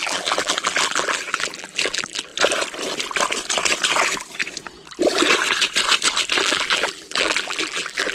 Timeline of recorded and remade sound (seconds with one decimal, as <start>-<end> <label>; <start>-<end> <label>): 0.0-2.3 remade; 2.3-6.4 recorded; 6.4-8.1 remade